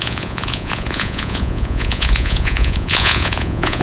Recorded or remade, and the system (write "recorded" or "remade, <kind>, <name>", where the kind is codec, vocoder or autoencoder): remade, vocoder, Vocos